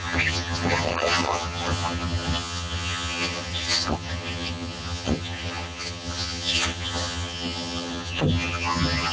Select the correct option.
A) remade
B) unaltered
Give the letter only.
A